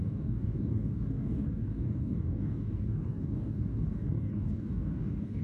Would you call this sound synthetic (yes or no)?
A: yes